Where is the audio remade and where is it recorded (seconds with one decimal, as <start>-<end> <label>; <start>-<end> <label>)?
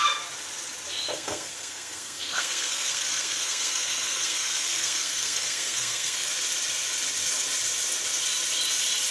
0.0-1.1 recorded; 1.1-6.3 remade; 6.3-9.1 recorded